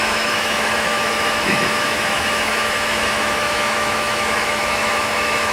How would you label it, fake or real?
fake